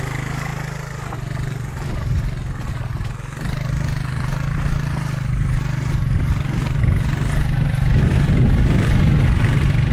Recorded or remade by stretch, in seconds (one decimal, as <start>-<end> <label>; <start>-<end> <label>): 0.0-9.9 recorded